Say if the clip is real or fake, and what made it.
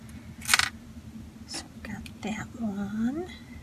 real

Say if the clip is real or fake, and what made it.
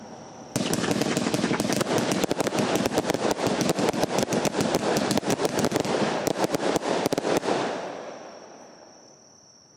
real